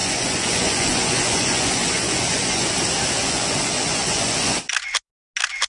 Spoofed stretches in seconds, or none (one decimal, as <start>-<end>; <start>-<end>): 0.0-2.7; 3.2-4.6